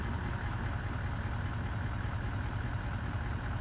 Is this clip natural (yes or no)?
yes